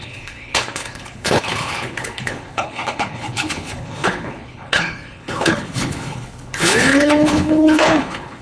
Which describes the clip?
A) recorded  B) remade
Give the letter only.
B